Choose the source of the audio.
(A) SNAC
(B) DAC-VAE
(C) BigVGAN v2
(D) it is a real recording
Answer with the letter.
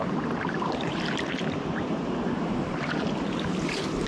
C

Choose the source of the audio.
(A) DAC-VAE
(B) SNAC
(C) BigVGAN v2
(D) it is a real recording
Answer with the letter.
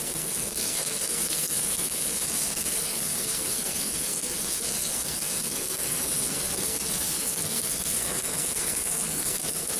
B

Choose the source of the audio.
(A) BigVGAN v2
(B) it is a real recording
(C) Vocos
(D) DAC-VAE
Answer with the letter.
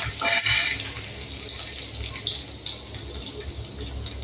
B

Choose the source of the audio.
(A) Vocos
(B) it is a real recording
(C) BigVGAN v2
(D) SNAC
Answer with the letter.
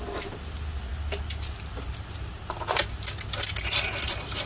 B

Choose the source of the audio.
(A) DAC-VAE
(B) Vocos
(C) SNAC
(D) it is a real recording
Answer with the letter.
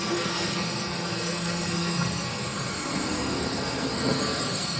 C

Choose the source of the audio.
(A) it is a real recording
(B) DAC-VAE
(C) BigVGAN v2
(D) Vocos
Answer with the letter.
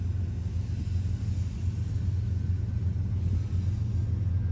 A